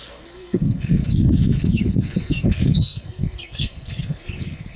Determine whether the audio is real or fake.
fake